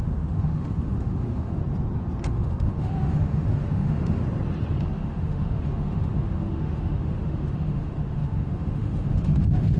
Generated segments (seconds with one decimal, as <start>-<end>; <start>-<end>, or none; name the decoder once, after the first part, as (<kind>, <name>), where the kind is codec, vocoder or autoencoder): 0.0-1.6 (autoencoder, DAC-VAE); 2.2-4.2; 4.8-9.8